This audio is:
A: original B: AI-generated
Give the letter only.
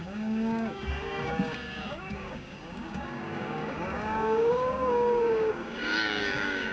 B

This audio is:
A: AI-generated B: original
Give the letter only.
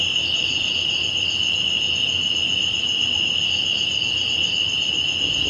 A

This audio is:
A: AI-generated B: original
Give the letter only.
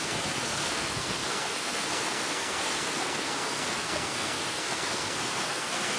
A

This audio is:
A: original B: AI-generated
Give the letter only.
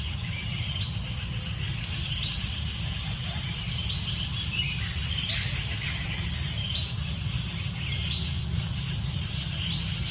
A